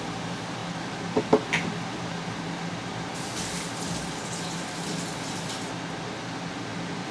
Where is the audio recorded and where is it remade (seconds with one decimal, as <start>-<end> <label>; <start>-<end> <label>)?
0.0-7.1 recorded